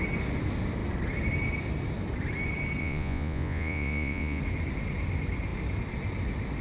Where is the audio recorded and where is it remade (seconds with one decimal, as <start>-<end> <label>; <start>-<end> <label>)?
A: 0.0-2.8 recorded; 2.8-4.4 remade; 4.4-6.6 recorded